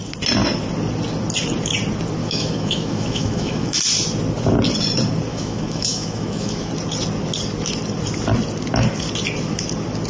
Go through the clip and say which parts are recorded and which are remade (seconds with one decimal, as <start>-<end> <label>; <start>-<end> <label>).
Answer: 0.0-2.2 recorded; 2.2-3.8 remade; 3.8-5.3 recorded; 5.3-6.7 remade; 6.7-10.1 recorded